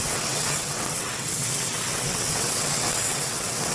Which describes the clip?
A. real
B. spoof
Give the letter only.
B